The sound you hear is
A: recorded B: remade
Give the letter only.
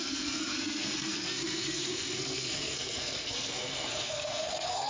B